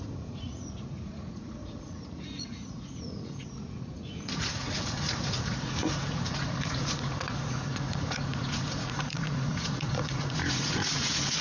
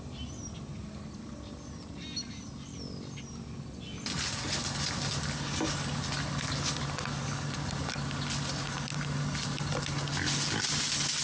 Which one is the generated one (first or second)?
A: first